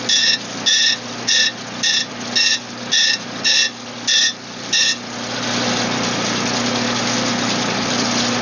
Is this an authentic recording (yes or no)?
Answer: yes